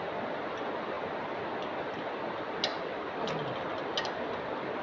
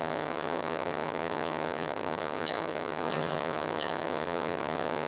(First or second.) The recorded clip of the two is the first